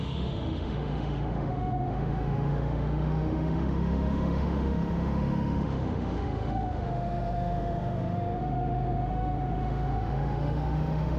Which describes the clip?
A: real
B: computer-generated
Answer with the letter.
B